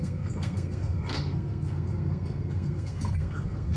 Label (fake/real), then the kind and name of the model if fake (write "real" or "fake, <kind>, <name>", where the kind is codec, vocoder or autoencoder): fake, codec, SNAC